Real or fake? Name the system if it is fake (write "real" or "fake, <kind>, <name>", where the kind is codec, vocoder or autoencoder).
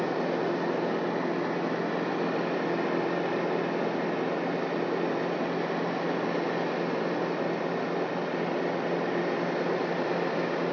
real